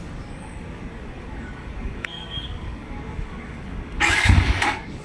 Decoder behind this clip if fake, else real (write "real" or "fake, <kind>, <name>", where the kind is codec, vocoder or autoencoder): fake, codec, DAC